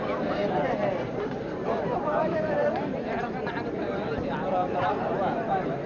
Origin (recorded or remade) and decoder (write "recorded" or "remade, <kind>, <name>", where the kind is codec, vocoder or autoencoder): remade, vocoder, BigVGAN v2